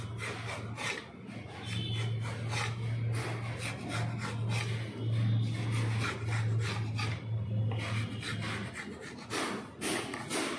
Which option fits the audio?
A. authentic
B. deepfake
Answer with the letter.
A